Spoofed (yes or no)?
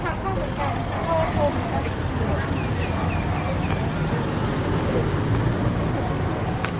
no